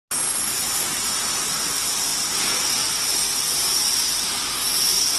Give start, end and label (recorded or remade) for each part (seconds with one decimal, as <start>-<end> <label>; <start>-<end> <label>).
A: 0.0-2.1 recorded; 2.1-2.7 remade; 2.7-5.2 recorded